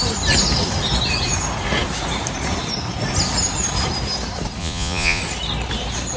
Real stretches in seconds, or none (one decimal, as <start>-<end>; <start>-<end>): 0.0-4.6; 5.2-6.2